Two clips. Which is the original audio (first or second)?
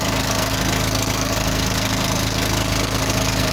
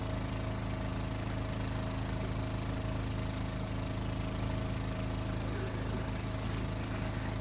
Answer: second